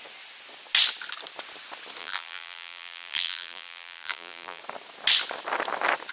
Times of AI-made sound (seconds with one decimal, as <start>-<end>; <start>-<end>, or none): 2.0-4.6